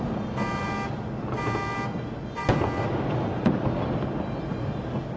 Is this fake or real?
real